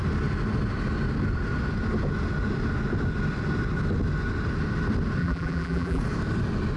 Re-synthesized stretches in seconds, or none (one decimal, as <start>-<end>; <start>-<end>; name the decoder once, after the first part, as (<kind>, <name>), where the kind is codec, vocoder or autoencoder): 5.2-6.0 (vocoder, BigVGAN v2)